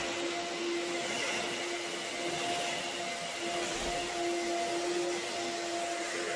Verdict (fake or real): real